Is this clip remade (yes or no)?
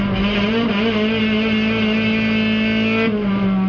no